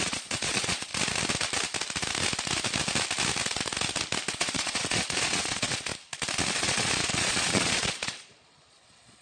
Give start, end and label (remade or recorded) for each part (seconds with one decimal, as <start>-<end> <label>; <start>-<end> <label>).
0.0-0.9 remade; 0.9-4.3 recorded; 4.3-5.9 remade; 5.9-6.5 recorded; 6.5-9.2 remade